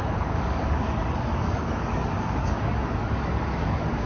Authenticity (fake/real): fake